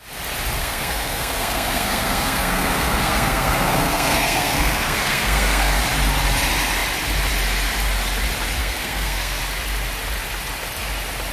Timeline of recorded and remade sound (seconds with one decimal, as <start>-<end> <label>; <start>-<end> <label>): 0.0-0.6 recorded; 0.6-5.8 remade; 5.8-8.6 recorded; 8.6-9.4 remade; 9.4-11.3 recorded